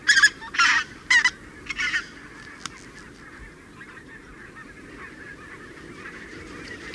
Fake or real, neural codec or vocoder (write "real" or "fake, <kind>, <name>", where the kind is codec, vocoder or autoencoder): real